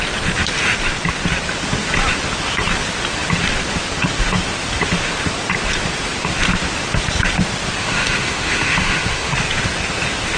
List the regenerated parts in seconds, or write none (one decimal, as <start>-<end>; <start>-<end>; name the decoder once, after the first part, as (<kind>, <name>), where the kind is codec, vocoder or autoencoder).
7.8-9.3 (autoencoder, DAC-VAE)